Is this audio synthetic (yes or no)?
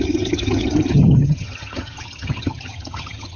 yes